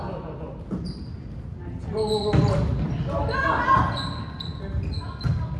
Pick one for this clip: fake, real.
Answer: real